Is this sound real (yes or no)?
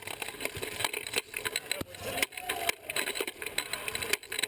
yes